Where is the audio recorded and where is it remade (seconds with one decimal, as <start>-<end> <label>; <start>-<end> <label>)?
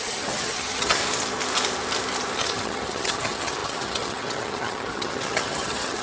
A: 0.0-1.0 remade; 1.0-2.4 recorded; 2.4-6.0 remade